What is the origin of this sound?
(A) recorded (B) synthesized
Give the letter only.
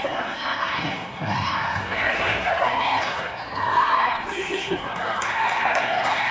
B